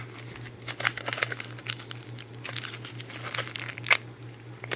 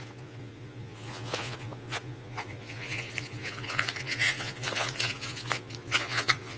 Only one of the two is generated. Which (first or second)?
second